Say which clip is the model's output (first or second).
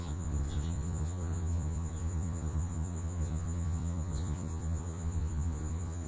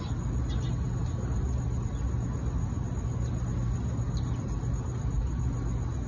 first